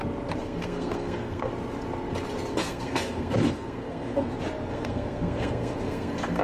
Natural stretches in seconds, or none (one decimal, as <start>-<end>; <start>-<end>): 0.0-0.4; 1.5-2.5; 4.3-4.7

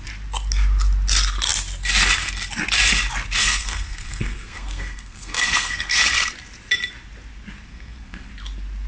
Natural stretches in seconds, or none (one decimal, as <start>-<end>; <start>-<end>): 0.0-3.4; 6.0-7.7; 8.3-8.9

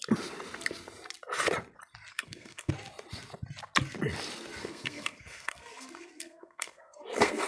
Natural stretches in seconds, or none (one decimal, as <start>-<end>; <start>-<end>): 0.0-2.1; 2.7-4.6

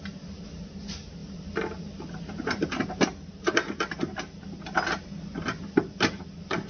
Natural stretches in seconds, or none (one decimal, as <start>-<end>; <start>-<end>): 0.0-6.7

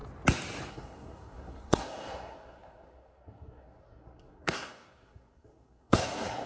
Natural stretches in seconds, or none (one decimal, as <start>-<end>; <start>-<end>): 0.0-0.7